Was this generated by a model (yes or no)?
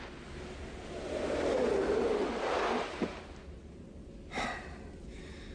no